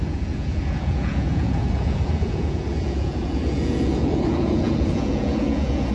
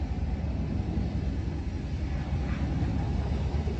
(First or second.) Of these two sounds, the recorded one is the second